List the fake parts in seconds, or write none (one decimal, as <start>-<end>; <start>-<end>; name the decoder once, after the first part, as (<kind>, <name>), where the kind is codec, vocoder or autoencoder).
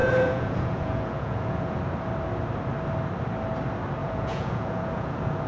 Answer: 0.0-1.8 (vocoder, Vocos); 4.0-5.5